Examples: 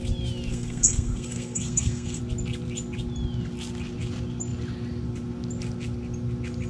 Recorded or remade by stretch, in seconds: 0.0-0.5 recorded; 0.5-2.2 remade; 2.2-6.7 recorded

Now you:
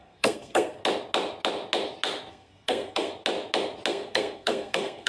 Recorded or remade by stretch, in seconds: 0.0-0.8 remade; 0.8-2.3 recorded; 2.3-3.1 remade; 3.1-3.9 recorded; 3.9-5.1 remade

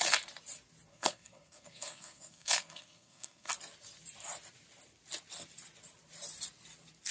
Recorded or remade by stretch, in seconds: 0.0-0.9 recorded; 0.9-3.5 remade; 3.5-7.1 recorded

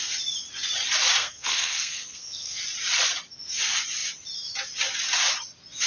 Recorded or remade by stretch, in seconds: 0.0-1.2 recorded; 1.2-2.6 remade; 2.6-5.9 recorded

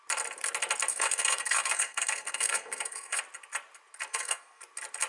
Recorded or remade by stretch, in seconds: 0.0-0.9 recorded; 0.9-3.2 remade; 3.2-4.1 recorded; 4.1-4.6 remade; 4.6-5.1 recorded